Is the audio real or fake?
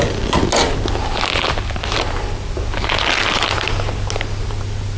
real